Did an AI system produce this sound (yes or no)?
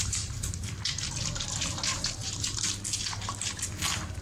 no